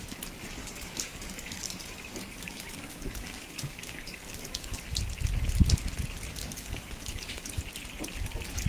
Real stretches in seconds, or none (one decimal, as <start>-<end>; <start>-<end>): 0.0-0.6; 4.8-6.4; 7.6-8.7